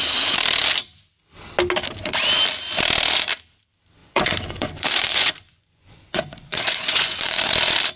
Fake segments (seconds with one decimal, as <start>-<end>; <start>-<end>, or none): 4.0-7.5